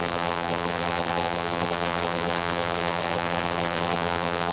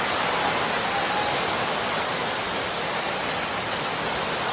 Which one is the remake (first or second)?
first